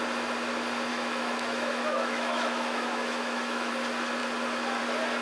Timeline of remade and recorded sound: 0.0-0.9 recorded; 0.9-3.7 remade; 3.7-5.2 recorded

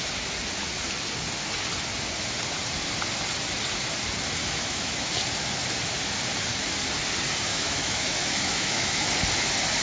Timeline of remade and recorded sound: 0.0-4.4 recorded; 4.4-5.1 remade; 5.1-7.5 recorded; 7.5-9.1 remade; 9.1-9.8 recorded

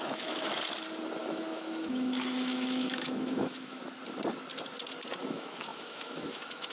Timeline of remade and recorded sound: 0.0-0.5 remade; 0.5-1.2 recorded; 1.2-3.8 remade; 3.8-5.2 recorded; 5.2-6.7 remade

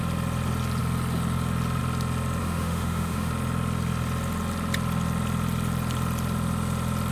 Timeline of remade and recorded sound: 0.0-2.4 recorded; 2.4-3.3 remade; 3.3-7.1 recorded

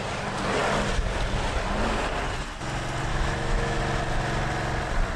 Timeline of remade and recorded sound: 0.0-3.1 recorded; 3.1-3.8 remade; 3.8-5.2 recorded